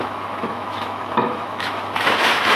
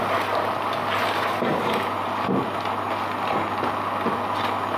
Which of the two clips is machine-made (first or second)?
first